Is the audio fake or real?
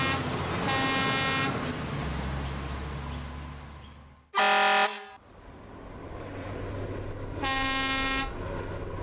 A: real